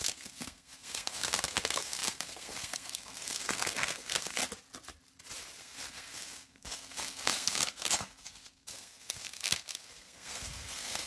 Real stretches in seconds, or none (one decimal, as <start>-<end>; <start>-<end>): 4.4-5.6